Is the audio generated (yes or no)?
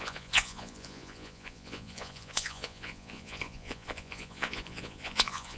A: yes